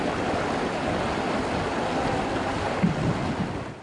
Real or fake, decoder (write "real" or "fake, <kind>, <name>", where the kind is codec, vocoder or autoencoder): real